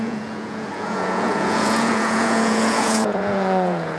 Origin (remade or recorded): remade